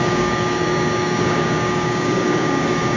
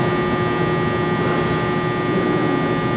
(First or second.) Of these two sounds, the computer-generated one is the first